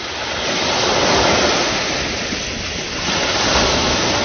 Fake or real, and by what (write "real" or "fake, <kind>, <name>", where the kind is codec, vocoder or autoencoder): real